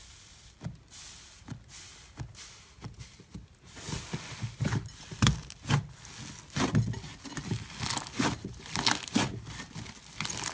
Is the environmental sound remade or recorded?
recorded